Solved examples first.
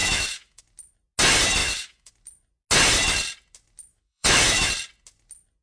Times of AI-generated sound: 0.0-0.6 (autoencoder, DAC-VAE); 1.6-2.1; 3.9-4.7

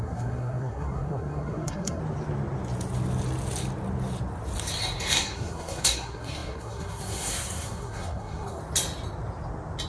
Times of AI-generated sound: 0.0-2.0 (codec, SNAC); 5.0-8.6

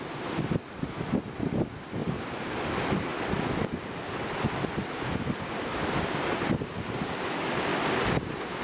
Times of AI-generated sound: none

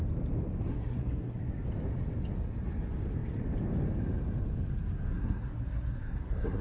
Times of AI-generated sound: 0.7-1.5 (codec, SNAC); 5.1-6.6

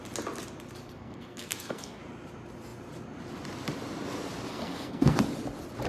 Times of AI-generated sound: 0.8-2.0 (codec, SNAC); 4.5-5.2

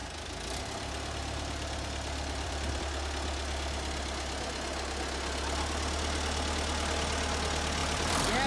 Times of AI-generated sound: 0.0-2.8 (vocoder, BigVGAN v2); 7.8-8.5

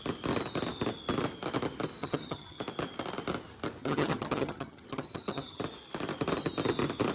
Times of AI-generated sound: 2.0-2.6 (vocoder, HiFi-GAN); 3.8-5.6